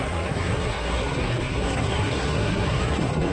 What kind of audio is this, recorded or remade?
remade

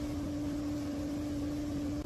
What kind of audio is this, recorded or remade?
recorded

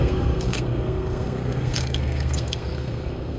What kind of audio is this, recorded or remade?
remade